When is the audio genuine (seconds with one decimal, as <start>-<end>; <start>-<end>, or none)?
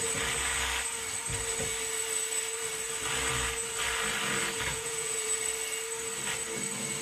0.0-4.7; 5.4-7.0